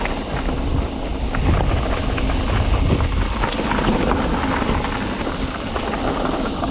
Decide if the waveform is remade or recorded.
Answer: recorded